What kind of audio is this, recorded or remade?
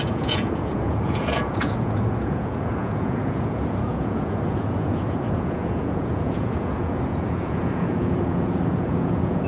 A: remade